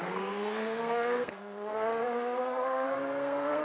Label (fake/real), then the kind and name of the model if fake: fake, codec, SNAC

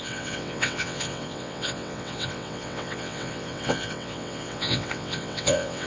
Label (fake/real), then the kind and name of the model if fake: fake, vocoder, WaveNeXt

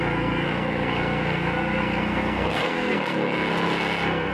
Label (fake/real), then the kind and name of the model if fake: fake, codec, SNAC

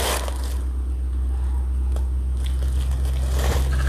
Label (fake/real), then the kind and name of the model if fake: real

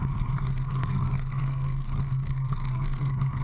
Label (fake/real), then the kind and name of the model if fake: fake, codec, SNAC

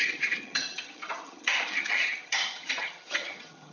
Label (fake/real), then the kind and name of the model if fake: fake, vocoder, HiFi-GAN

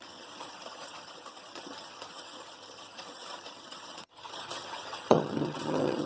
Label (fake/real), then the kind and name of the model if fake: fake, vocoder, HiFi-GAN